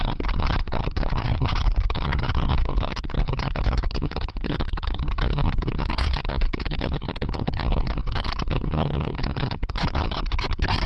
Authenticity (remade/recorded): remade